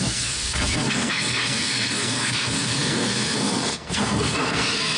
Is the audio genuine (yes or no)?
no